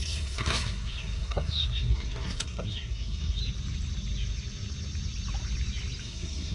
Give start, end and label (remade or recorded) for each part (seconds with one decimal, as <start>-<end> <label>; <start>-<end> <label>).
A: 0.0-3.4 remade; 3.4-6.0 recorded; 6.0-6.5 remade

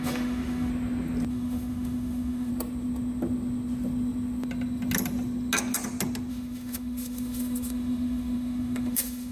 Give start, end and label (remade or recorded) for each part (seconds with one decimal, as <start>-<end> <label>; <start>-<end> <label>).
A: 0.0-0.7 remade; 0.7-1.3 recorded; 1.3-2.5 remade; 2.5-6.3 recorded; 6.3-9.3 remade

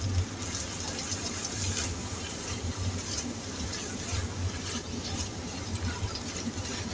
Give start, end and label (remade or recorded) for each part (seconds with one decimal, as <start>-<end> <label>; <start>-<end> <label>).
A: 0.0-2.0 recorded; 2.0-6.1 remade; 6.1-6.9 recorded

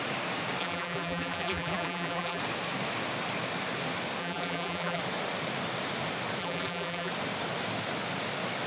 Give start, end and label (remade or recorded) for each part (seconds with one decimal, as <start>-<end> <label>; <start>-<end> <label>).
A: 0.0-0.6 recorded; 0.6-2.4 remade; 2.4-4.2 recorded; 4.2-5.0 remade; 5.0-6.4 recorded; 6.4-7.1 remade; 7.1-8.7 recorded

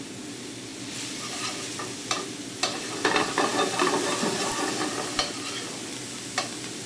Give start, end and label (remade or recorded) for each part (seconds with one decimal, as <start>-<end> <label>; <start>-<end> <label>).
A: 0.0-6.9 recorded